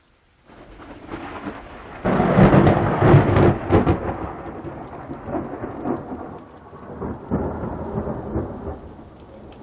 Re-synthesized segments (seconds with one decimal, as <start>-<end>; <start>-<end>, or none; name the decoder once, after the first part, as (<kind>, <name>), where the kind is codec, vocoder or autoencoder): none